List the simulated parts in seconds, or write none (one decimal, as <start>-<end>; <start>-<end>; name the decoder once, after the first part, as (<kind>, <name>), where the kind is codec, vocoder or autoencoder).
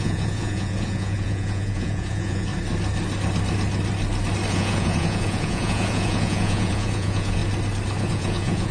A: 0.0-2.5 (vocoder, Vocos); 4.5-7.4; 8.0-8.7